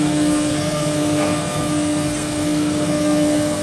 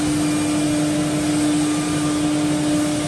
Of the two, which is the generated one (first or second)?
first